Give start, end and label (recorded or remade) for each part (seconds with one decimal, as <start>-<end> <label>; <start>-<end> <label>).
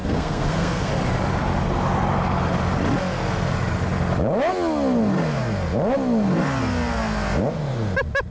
0.0-0.9 remade; 0.9-8.3 recorded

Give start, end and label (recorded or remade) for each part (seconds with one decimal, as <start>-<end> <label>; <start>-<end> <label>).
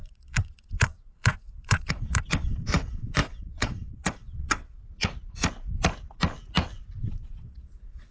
0.0-4.8 remade; 4.8-7.0 recorded; 7.0-8.1 remade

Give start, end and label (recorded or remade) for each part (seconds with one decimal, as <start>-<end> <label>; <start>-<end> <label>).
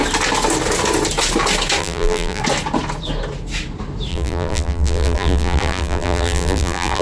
0.0-1.8 recorded; 1.8-2.4 remade; 2.4-4.1 recorded; 4.1-7.0 remade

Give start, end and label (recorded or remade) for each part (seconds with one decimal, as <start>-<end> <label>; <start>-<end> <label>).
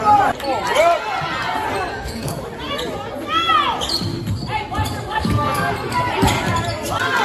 0.0-1.9 recorded; 1.9-2.4 remade; 2.4-5.1 recorded; 5.1-5.7 remade; 5.7-7.2 recorded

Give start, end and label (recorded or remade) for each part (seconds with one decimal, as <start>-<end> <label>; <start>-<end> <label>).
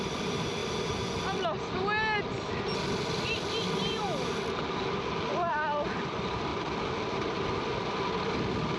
0.0-0.6 remade; 0.6-5.5 recorded; 5.5-6.5 remade; 6.5-7.1 recorded; 7.1-8.8 remade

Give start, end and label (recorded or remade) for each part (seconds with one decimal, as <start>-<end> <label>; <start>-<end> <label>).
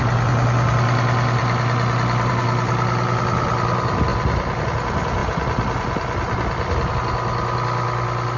0.0-8.4 recorded